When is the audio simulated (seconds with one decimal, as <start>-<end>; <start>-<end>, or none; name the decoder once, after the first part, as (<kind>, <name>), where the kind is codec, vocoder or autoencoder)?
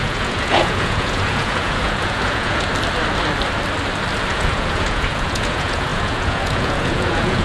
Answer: 0.0-2.7 (vocoder, Vocos); 4.3-7.4